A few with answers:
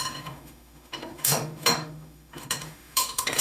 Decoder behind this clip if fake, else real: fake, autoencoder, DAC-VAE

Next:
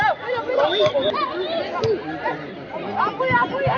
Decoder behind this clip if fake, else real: real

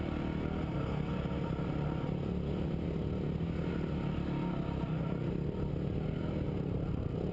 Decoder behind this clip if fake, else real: real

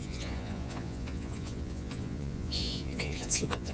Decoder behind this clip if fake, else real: fake, vocoder, Vocos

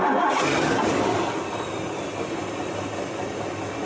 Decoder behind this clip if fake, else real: real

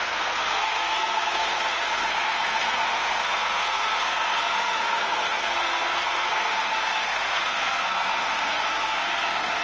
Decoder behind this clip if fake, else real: fake, codec, SNAC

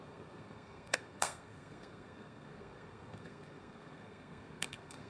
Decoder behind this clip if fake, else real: fake, codec, SNAC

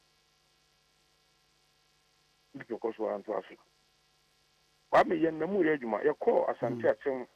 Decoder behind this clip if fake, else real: real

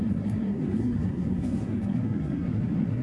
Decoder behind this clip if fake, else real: fake, codec, SNAC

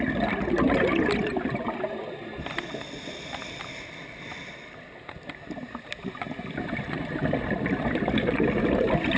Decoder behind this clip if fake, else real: real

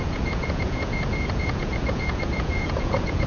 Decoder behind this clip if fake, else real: fake, vocoder, Vocos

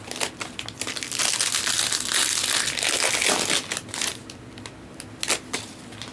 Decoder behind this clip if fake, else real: real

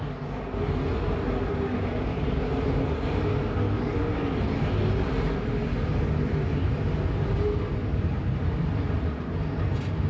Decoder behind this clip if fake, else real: real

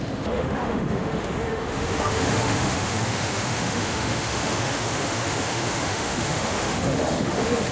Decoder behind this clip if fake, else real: fake, autoencoder, DAC-VAE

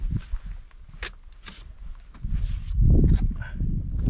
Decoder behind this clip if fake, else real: real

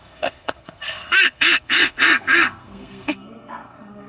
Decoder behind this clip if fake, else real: fake, codec, SNAC